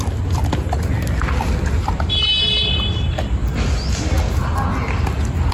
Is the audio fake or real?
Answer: real